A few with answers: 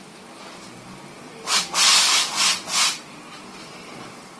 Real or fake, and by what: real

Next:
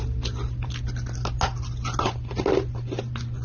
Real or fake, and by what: real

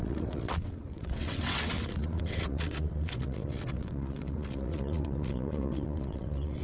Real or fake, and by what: fake, vocoder, WaveNeXt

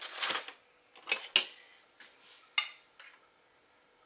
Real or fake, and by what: real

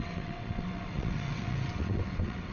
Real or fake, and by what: fake, vocoder, WaveNeXt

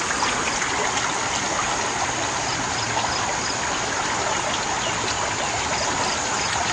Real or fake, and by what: real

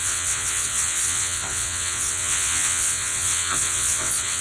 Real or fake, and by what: fake, vocoder, WaveNeXt